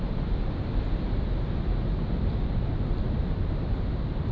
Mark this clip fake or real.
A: real